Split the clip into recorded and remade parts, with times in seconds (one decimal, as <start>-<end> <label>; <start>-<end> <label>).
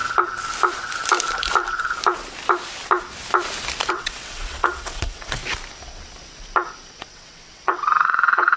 0.0-3.9 recorded; 3.9-5.4 remade; 5.4-6.9 recorded; 6.9-8.6 remade